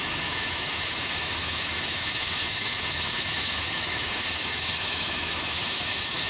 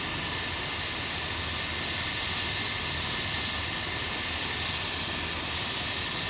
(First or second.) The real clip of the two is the second